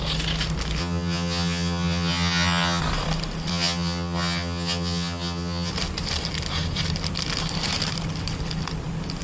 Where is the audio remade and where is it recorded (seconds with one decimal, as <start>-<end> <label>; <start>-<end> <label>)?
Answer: 0.0-0.8 recorded; 0.8-2.8 remade; 2.8-3.5 recorded; 3.5-5.7 remade; 5.7-9.2 recorded